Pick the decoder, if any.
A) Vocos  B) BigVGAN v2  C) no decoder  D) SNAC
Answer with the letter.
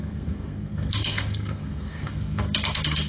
D